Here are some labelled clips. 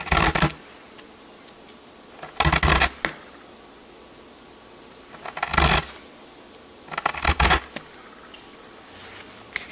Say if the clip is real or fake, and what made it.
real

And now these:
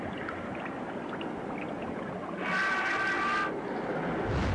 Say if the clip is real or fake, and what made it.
real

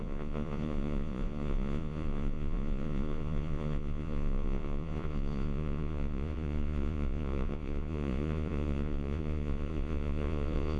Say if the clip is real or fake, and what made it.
fake, vocoder, Vocos